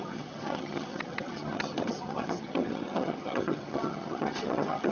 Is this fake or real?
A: fake